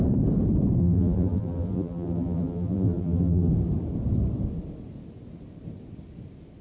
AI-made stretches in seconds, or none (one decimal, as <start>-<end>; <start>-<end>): 0.8-3.5